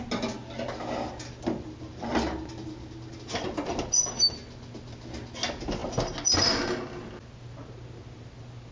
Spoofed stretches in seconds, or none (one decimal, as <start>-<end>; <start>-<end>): none